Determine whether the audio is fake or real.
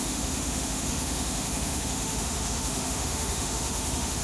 fake